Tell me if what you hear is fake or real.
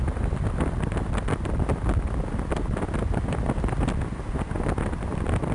real